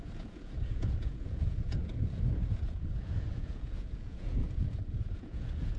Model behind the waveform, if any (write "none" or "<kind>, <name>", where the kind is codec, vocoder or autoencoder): vocoder, Vocos